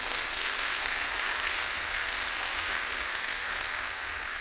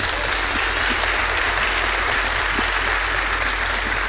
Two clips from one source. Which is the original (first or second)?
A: second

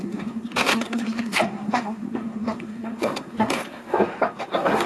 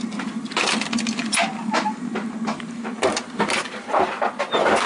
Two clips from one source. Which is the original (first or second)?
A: second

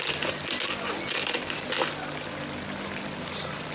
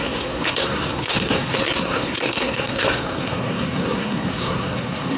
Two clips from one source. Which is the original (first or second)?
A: first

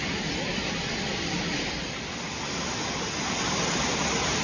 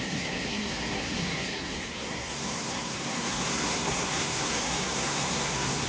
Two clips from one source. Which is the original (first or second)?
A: first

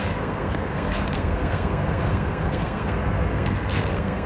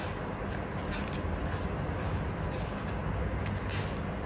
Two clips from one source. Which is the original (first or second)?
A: second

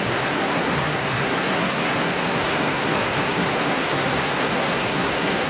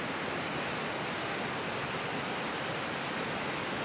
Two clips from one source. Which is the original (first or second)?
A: second